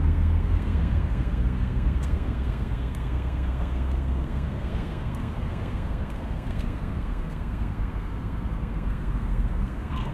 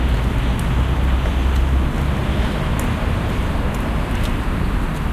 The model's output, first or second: first